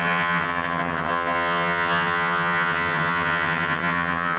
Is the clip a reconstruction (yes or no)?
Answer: yes